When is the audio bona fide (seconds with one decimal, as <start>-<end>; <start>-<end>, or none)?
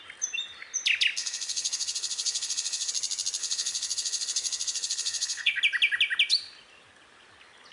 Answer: 0.0-1.2; 2.9-3.4; 5.6-7.7